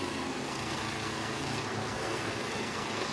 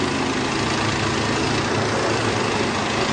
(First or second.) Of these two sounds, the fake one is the first